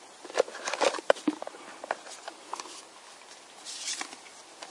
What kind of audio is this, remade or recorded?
recorded